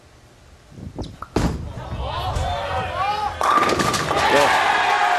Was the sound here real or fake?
real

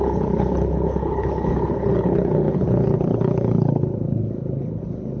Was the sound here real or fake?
fake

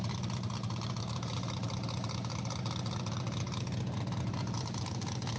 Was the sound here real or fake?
real